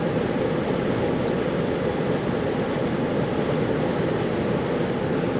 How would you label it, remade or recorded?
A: recorded